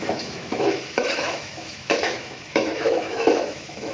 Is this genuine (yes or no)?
no